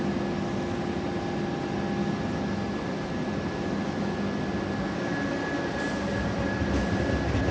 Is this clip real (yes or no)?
yes